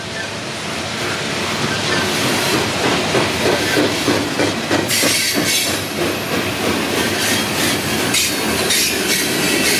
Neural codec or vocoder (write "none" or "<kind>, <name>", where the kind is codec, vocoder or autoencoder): none